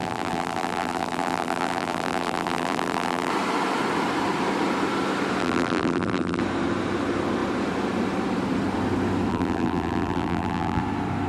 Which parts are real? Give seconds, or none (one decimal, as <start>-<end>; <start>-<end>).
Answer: 3.3-5.4; 6.4-9.3; 10.8-11.3